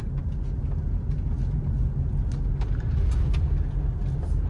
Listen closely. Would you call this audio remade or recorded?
recorded